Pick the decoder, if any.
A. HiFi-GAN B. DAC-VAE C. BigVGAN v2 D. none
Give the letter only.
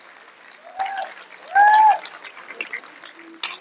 D